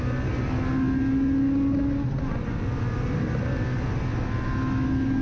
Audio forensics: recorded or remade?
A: recorded